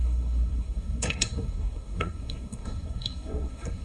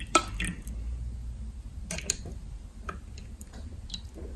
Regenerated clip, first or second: first